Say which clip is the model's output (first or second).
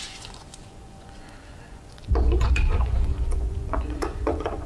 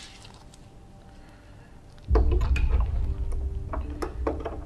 first